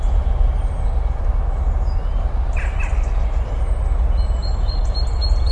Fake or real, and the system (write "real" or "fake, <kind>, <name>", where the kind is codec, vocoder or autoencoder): real